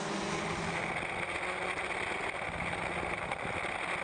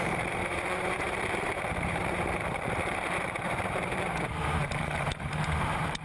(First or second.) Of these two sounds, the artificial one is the second